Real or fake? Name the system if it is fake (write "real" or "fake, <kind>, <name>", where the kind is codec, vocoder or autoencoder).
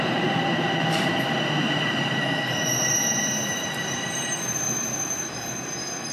fake, vocoder, BigVGAN v2